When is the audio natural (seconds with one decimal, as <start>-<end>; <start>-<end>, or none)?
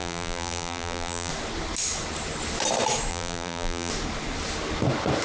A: 1.3-3.1; 3.9-5.2